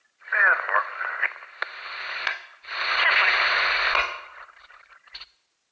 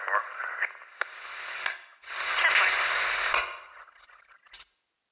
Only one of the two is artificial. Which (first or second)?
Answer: first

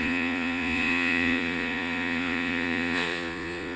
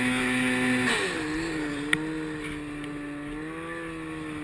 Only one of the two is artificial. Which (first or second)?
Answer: first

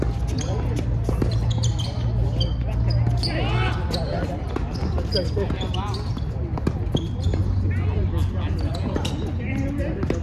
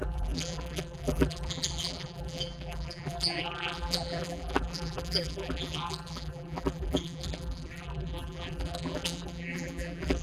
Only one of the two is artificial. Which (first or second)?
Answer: second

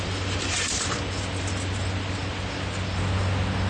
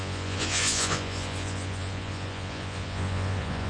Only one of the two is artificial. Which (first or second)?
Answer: second